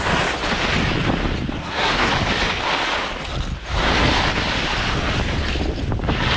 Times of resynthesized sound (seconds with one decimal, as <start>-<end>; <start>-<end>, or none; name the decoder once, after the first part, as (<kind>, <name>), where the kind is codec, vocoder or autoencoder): 1.6-2.1 (codec, SNAC)

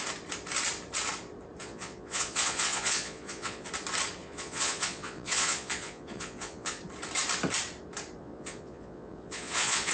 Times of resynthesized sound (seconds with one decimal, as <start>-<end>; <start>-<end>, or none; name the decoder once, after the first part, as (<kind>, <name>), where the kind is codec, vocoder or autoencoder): 1.6-3.7 (vocoder, Vocos); 4.2-6.8; 8.2-9.9

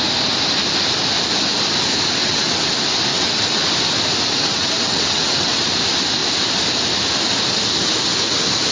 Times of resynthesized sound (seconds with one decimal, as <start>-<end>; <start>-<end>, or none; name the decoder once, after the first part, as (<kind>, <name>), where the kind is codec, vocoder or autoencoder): 2.2-2.7 (vocoder, WaveNeXt); 3.1-3.7; 4.4-5.6

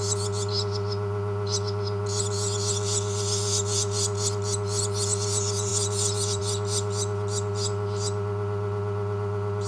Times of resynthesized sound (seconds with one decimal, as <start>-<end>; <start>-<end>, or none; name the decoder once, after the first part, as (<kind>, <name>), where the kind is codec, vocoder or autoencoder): none

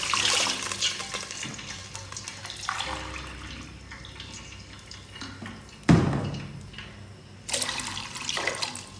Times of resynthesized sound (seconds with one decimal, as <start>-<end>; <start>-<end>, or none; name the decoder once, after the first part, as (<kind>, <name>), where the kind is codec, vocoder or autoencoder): none

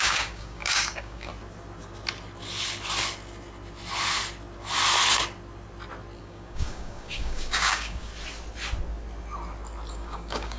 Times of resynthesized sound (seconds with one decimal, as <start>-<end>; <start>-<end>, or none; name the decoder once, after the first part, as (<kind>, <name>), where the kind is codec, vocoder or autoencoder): 0.0-1.3 (codec, DAC); 6.2-8.1; 9.9-10.6